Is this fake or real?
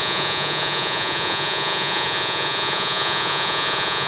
fake